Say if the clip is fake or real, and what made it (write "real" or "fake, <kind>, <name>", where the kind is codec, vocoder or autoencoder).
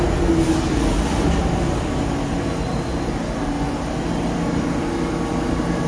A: real